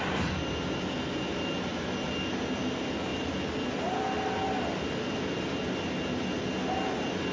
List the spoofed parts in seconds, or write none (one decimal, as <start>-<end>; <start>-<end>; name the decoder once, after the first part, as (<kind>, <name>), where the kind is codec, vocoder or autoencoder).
none